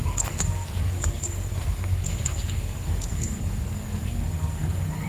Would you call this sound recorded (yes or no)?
no